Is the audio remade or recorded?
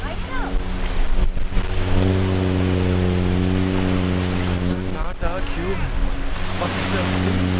recorded